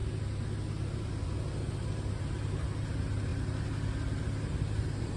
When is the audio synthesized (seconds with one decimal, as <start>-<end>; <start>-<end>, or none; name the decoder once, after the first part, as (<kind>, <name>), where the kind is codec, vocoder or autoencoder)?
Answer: none